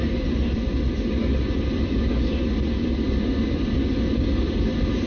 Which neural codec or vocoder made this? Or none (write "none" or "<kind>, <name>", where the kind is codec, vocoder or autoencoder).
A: vocoder, BigVGAN v2